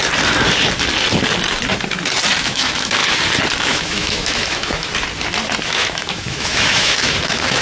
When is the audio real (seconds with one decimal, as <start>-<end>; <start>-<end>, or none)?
0.0-2.4; 3.0-3.6; 4.9-5.7